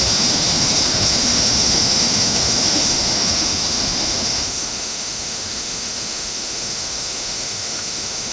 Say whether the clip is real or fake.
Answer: fake